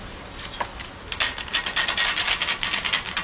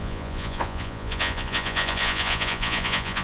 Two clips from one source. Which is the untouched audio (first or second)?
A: first